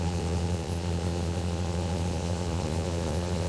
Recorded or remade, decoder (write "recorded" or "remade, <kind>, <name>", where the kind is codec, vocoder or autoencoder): remade, vocoder, Vocos